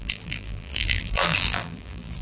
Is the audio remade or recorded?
remade